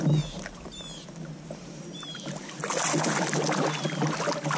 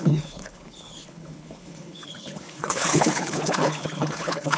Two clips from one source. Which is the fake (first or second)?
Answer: second